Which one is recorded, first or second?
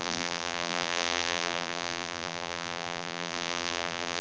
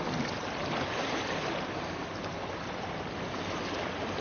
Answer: second